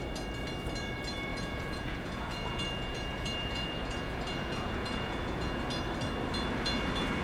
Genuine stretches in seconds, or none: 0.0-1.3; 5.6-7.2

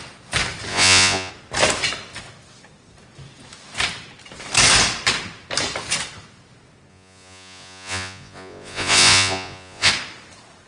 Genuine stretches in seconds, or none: 0.0-0.7; 1.3-6.9; 9.9-10.7